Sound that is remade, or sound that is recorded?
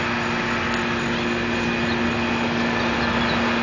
recorded